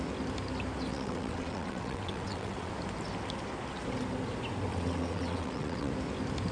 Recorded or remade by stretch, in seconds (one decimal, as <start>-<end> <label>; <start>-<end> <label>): 0.0-0.9 recorded; 0.9-2.7 remade; 2.7-4.7 recorded; 4.7-5.9 remade; 5.9-6.5 recorded